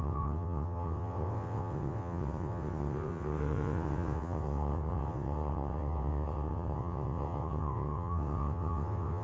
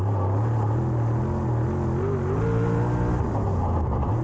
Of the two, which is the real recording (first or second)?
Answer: second